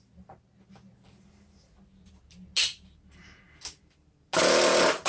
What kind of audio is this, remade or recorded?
recorded